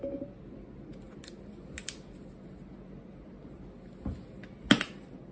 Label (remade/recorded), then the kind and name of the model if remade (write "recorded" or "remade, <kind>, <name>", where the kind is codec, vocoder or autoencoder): recorded